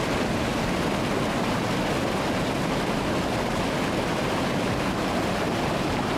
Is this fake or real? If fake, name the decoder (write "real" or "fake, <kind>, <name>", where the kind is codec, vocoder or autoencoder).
real